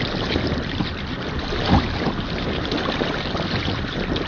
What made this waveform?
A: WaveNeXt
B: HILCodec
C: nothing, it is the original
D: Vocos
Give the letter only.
C